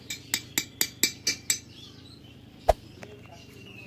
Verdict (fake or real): real